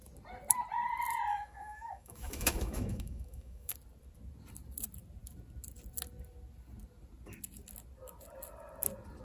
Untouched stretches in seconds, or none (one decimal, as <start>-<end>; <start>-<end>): 0.0-1.3; 3.7-9.2

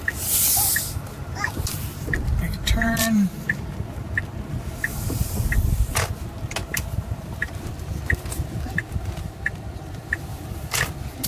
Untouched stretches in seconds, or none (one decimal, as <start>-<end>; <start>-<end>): 0.0-1.9; 4.2-4.9; 5.5-6.6; 9.9-11.3

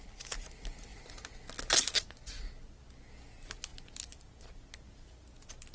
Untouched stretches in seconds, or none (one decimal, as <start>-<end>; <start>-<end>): 0.0-5.7

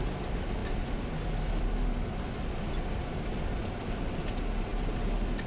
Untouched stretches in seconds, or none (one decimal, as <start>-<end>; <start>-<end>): 0.0-5.5